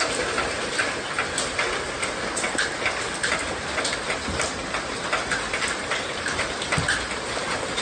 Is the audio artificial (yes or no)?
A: no